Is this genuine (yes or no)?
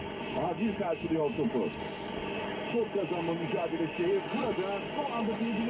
yes